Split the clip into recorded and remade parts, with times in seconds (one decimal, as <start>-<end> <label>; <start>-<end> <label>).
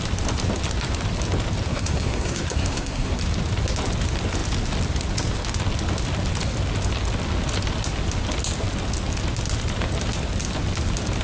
0.0-1.7 recorded; 1.7-3.2 remade; 3.2-11.2 recorded